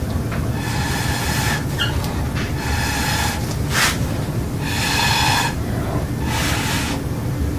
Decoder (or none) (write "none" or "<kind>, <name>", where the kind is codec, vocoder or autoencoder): none